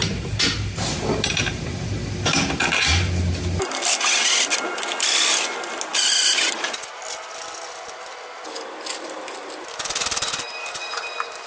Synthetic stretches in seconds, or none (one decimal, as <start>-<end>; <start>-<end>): none

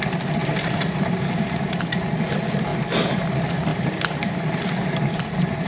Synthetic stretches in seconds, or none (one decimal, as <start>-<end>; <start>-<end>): 0.4-1.8; 3.7-5.7

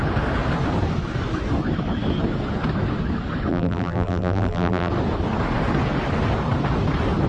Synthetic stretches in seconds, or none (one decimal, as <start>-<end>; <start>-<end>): 3.5-4.9